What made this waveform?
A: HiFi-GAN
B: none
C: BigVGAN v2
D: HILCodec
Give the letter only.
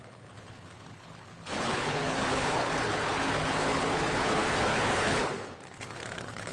D